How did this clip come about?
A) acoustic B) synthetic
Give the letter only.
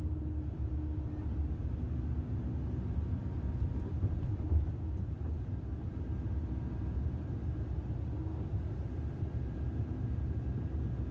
A